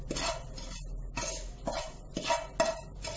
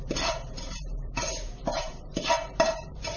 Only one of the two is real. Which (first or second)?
first